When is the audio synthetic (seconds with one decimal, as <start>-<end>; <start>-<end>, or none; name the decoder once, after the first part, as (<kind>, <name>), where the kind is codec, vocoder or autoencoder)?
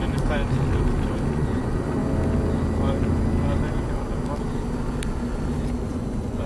1.3-2.0 (vocoder, Vocos); 5.9-6.5